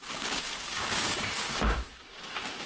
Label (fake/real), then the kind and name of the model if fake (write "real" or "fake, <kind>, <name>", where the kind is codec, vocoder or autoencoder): fake, codec, DAC